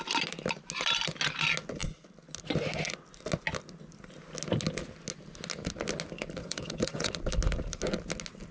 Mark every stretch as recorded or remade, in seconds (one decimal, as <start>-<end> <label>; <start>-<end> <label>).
0.0-6.4 recorded; 6.4-7.1 remade; 7.1-8.5 recorded